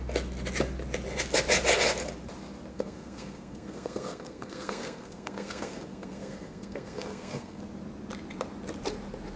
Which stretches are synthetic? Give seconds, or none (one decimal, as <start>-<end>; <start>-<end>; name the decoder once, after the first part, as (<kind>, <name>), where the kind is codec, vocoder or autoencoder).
2.7-7.6 (codec, SNAC)